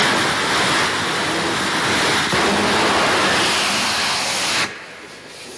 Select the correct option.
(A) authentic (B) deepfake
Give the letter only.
A